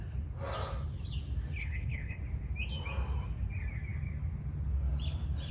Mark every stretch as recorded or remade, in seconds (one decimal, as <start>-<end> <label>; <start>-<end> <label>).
0.0-1.6 recorded; 1.6-2.2 remade; 2.2-5.5 recorded